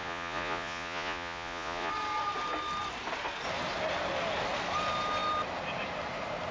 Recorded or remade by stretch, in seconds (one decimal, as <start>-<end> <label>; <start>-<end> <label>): 0.0-1.9 remade; 1.9-6.5 recorded